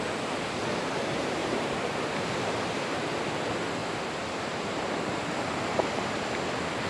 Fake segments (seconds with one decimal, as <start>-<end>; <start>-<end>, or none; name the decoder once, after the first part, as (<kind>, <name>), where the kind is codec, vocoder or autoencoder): 1.4-3.0 (vocoder, BigVGAN v2); 3.8-6.2

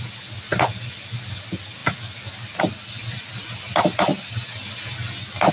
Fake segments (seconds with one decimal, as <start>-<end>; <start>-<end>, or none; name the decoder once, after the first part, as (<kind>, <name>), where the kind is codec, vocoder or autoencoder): none

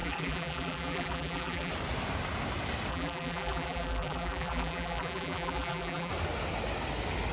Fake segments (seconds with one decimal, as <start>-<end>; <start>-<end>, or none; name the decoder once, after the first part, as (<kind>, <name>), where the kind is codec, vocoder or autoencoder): 0.0-1.7 (vocoder, BigVGAN v2); 2.9-6.1